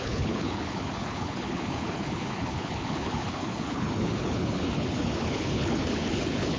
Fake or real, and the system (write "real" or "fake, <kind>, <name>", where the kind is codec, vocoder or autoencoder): fake, codec, HILCodec